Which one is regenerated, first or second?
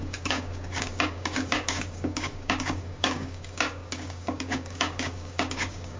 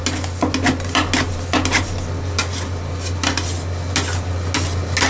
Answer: first